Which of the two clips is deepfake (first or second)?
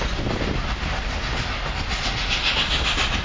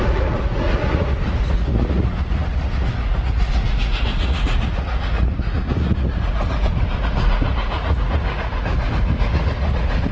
second